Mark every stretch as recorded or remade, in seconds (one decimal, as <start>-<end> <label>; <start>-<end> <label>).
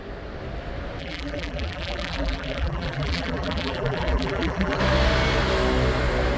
0.0-1.0 recorded; 1.0-4.8 remade; 4.8-6.4 recorded